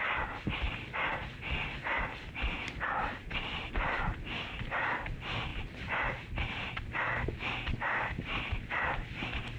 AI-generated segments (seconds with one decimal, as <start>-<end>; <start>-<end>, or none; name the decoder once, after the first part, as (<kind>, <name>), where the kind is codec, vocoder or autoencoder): none